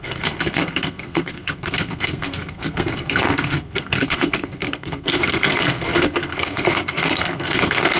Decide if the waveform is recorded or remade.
remade